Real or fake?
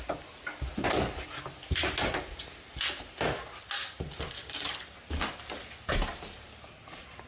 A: real